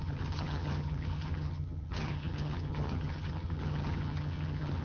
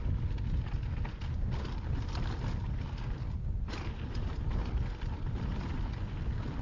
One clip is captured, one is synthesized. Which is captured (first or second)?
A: second